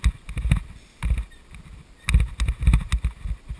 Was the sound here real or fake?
real